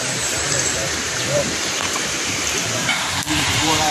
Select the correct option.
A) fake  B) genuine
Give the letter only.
A